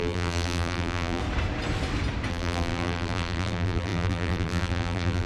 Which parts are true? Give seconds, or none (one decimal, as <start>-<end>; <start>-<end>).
1.2-2.3